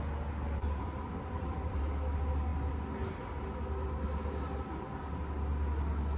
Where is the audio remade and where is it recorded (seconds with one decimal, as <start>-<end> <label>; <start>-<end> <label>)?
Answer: 0.0-0.6 recorded; 0.6-1.8 remade; 1.8-6.2 recorded